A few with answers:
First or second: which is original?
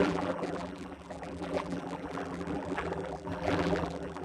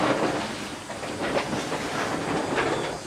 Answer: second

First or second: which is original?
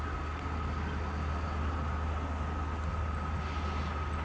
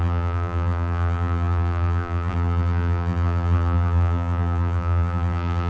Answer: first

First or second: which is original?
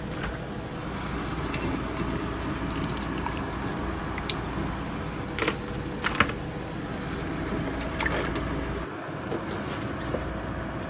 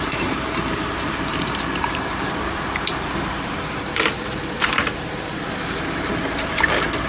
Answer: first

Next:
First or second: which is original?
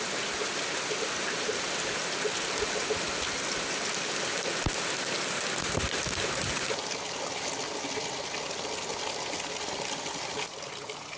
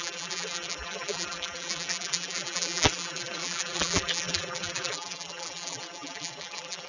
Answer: first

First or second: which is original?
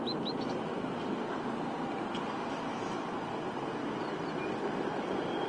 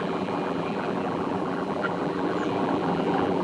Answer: first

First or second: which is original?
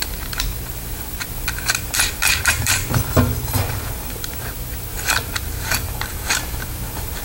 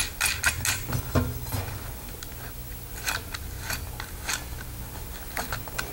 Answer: second